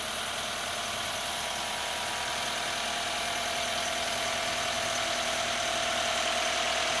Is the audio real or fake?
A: real